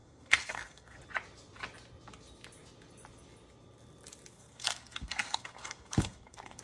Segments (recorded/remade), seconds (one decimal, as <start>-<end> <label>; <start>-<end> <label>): 0.0-1.0 remade; 1.0-4.3 recorded; 4.3-6.6 remade